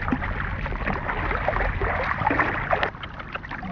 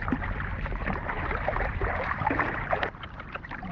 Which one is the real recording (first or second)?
first